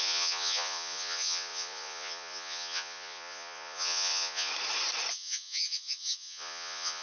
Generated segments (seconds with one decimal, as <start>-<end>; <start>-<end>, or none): 0.0-4.5; 5.1-7.0